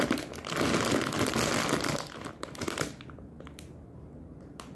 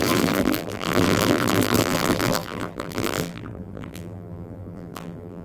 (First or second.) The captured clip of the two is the first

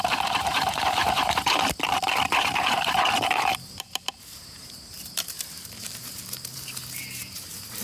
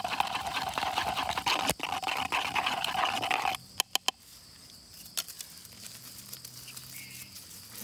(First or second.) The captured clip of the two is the second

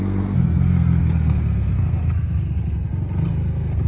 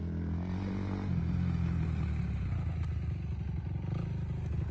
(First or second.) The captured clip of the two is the second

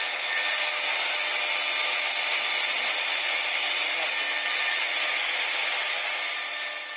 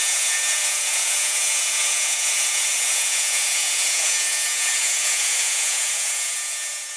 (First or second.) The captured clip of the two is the first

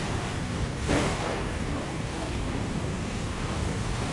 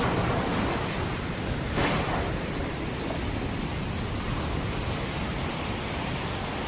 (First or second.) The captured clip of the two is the second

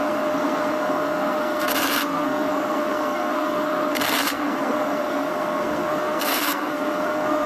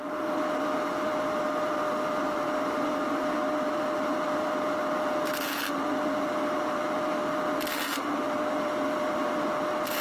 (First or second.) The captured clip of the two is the second